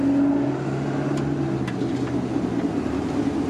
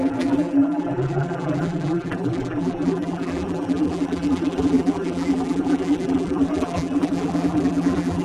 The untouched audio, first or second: first